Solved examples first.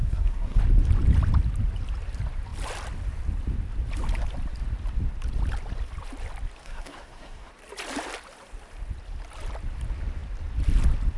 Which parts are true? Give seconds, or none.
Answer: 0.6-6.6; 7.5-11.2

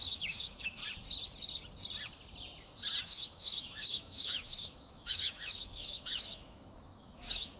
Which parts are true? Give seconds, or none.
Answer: 0.8-3.0

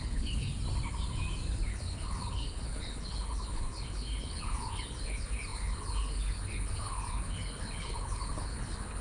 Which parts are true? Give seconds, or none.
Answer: 0.5-1.7